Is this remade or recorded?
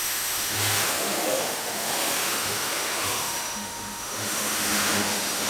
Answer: remade